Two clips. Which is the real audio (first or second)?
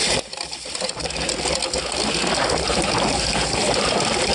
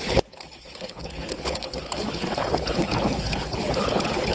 first